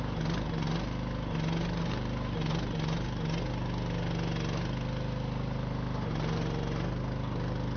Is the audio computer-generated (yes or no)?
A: no